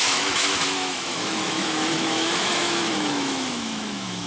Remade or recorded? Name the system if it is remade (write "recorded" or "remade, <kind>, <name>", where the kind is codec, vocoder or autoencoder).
remade, autoencoder, DAC-VAE